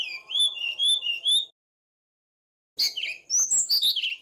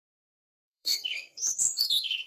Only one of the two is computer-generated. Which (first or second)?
second